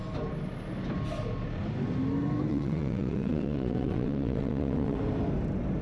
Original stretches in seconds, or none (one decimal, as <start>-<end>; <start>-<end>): 0.0-2.5; 5.0-5.8